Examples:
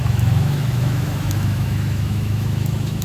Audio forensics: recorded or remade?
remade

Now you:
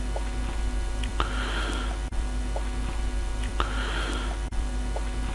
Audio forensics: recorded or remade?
recorded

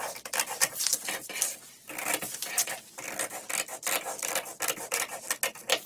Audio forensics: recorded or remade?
recorded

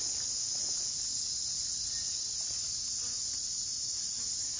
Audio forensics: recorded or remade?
recorded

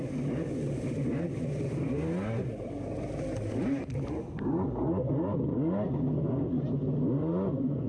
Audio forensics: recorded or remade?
recorded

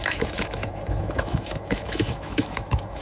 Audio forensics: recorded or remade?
remade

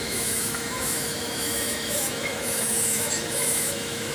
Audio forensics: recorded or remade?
remade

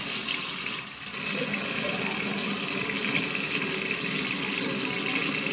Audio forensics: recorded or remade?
recorded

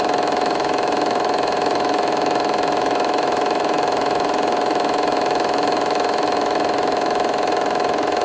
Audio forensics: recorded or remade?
remade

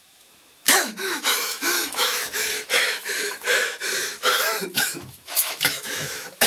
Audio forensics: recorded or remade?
remade